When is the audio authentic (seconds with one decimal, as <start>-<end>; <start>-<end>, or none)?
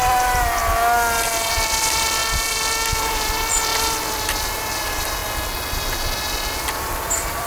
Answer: 0.6-1.5; 2.2-3.0; 5.2-6.7